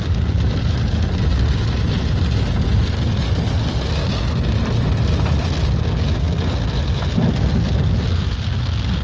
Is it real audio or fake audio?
real